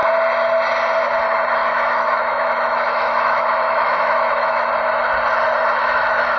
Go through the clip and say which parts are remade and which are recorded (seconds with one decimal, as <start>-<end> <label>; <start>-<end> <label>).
0.0-1.6 recorded; 1.6-4.7 remade; 4.7-5.8 recorded; 5.8-6.4 remade